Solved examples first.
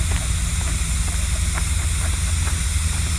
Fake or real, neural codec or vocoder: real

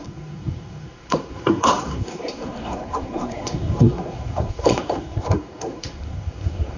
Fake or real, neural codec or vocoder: fake, codec, SNAC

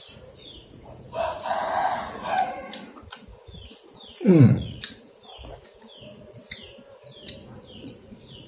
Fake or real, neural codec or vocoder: fake, vocoder, Vocos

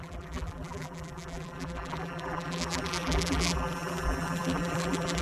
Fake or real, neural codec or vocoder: fake, vocoder, BigVGAN v2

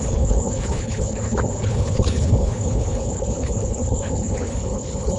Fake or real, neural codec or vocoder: fake, codec, HILCodec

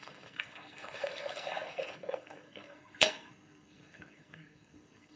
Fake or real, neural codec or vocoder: fake, codec, SNAC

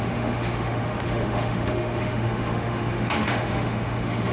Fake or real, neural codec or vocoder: fake, autoencoder, DAC-VAE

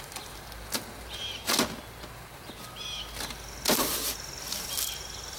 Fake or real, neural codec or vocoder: real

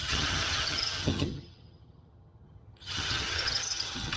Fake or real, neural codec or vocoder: fake, vocoder, HiFi-GAN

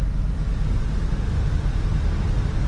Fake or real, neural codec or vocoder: real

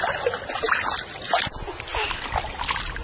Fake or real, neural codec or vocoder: real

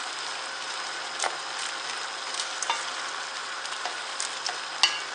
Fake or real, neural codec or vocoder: real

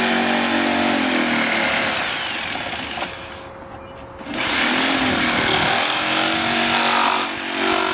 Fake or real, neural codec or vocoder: real